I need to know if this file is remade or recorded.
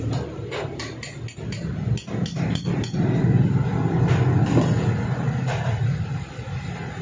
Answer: recorded